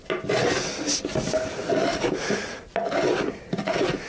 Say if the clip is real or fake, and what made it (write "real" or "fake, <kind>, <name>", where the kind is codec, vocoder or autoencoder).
real